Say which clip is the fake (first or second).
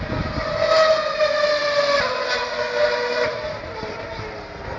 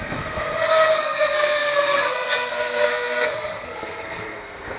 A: second